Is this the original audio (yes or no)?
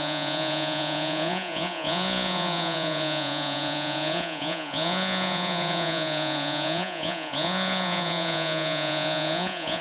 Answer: no